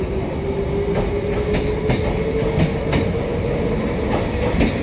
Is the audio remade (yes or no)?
no